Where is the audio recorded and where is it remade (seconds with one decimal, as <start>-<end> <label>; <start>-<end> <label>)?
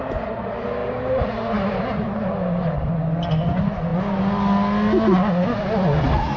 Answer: 0.0-0.8 recorded; 0.8-2.9 remade; 2.9-6.4 recorded